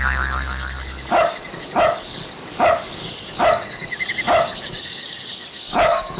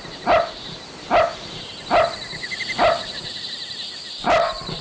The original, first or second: second